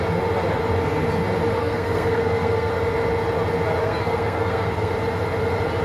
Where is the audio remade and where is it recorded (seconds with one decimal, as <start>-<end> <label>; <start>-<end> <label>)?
0.0-1.6 recorded; 1.6-2.7 remade; 2.7-3.8 recorded; 3.8-4.9 remade; 4.9-5.8 recorded